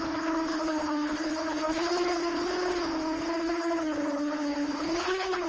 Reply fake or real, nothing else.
fake